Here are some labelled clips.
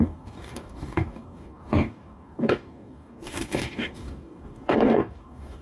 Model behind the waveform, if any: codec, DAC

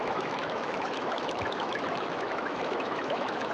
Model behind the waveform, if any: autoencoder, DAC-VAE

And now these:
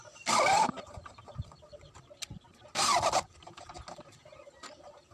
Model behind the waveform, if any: none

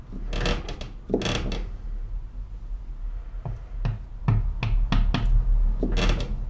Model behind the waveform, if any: none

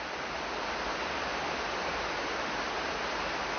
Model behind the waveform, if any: none